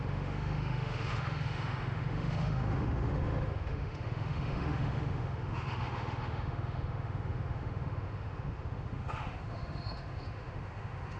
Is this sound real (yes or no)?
no